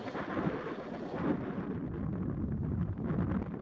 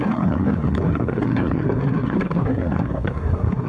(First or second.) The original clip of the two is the first